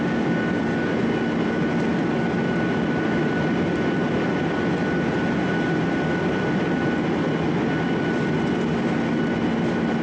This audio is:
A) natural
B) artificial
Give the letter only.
A